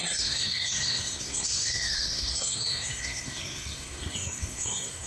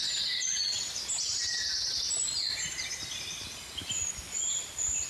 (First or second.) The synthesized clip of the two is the first